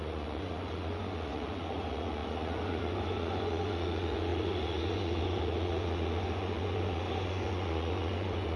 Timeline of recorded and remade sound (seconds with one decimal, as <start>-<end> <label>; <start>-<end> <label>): 0.0-8.6 remade